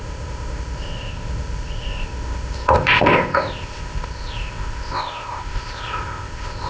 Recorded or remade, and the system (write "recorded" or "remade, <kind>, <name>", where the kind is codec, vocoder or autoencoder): remade, codec, ZipCodec